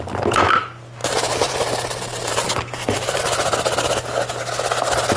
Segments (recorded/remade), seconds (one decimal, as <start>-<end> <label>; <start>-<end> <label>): 0.0-1.0 recorded; 1.0-3.2 remade; 3.2-5.2 recorded